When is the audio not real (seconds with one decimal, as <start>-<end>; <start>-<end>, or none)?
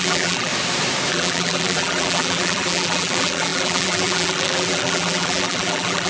0.0-0.5; 1.1-6.1